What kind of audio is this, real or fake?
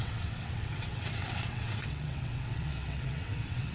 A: fake